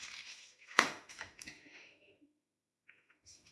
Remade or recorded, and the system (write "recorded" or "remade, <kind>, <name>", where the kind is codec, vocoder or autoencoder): remade, autoencoder, DAC-VAE